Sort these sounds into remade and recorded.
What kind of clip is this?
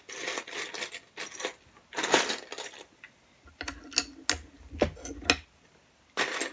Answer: recorded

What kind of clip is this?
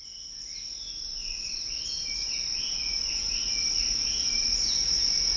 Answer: recorded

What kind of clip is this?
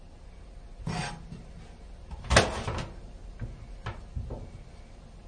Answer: recorded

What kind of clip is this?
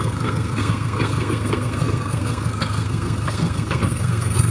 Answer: remade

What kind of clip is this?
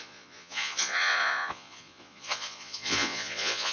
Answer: remade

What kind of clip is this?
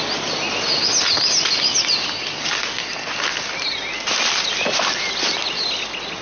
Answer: recorded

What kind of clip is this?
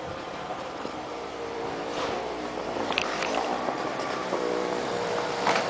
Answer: remade